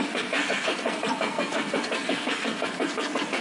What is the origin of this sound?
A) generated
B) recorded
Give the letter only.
A